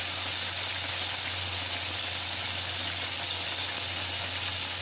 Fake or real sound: real